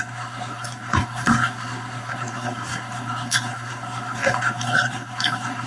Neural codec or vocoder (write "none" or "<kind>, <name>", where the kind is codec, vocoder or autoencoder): codec, SNAC